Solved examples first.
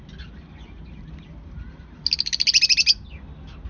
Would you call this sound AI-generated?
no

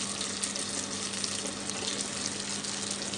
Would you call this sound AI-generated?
no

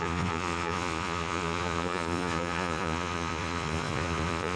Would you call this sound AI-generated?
yes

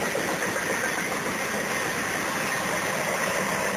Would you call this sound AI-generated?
no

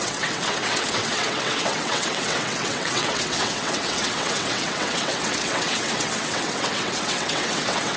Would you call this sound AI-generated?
yes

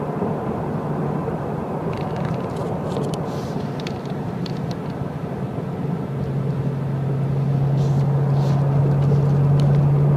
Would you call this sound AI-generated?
no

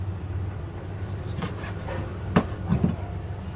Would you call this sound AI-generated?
no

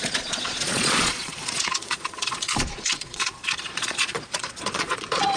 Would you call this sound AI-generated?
yes